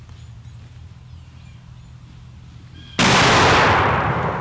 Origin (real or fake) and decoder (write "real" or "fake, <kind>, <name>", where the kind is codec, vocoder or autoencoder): real